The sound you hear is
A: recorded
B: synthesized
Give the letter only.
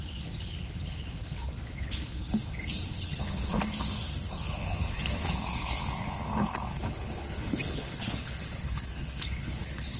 B